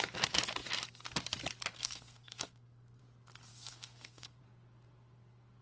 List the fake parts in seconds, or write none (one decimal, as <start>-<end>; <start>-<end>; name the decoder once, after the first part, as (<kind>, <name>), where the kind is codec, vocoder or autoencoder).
1.7-3.0 (codec, SNAC); 3.5-4.4